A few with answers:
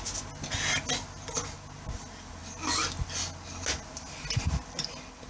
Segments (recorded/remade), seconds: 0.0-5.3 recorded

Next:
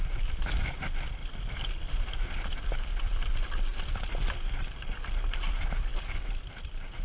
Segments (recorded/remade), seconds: 0.0-7.0 recorded

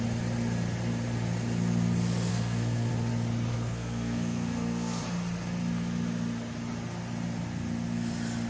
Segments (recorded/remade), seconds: 0.0-2.3 recorded; 2.3-2.9 remade; 2.9-3.5 recorded; 3.5-5.0 remade; 5.0-8.5 recorded

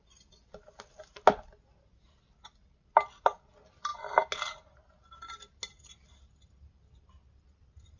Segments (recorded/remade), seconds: 0.0-8.0 recorded

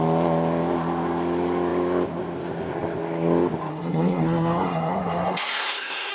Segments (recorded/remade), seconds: 0.0-3.7 recorded; 3.7-6.1 remade

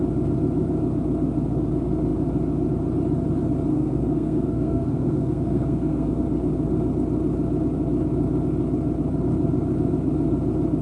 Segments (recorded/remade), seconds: 0.0-3.7 recorded; 3.7-6.2 remade; 6.2-10.8 recorded

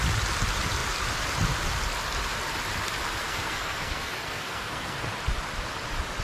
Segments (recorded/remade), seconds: 0.0-3.2 recorded; 3.2-5.0 remade; 5.0-6.2 recorded